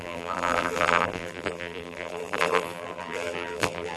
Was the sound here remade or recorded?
remade